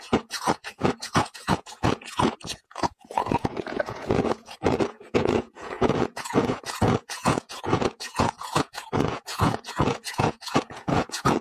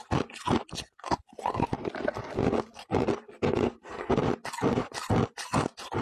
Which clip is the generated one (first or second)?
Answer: first